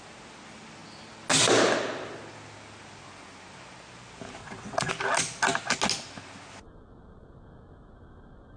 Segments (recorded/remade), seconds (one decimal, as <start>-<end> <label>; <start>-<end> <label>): 0.0-4.4 recorded; 4.4-4.9 remade; 4.9-8.6 recorded